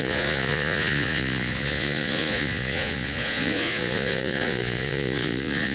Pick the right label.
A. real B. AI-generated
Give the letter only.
B